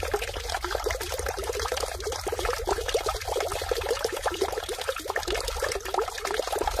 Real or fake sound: real